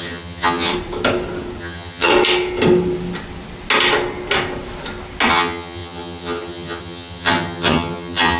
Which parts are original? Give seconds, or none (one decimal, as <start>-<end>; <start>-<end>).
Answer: 0.7-1.6; 2.1-5.3